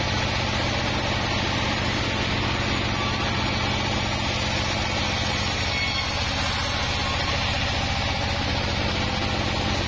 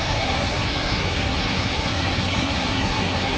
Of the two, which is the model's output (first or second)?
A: second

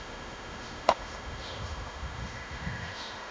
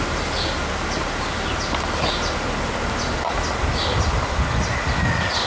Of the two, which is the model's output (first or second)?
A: first